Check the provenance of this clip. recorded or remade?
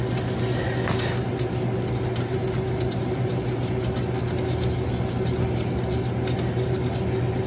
recorded